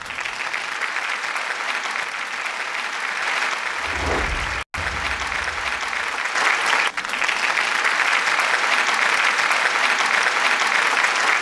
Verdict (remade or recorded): recorded